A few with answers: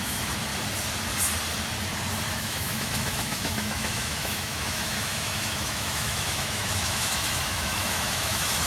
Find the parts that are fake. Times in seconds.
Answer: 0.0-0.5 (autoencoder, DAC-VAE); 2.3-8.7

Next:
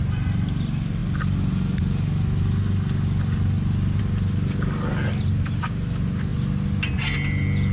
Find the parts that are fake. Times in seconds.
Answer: none